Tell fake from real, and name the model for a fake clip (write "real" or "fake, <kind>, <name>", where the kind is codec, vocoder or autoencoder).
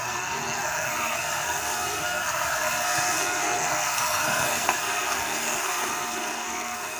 fake, codec, SNAC